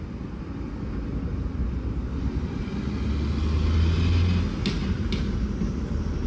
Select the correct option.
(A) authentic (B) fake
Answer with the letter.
A